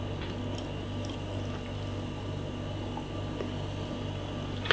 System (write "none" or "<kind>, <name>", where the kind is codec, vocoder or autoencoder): none